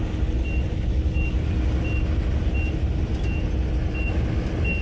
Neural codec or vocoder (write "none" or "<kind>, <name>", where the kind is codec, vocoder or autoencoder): none